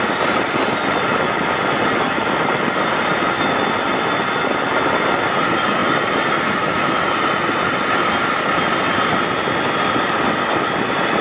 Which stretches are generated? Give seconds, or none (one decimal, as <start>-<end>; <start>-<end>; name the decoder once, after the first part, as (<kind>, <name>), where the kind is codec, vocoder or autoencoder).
5.8-6.3 (vocoder, BigVGAN v2)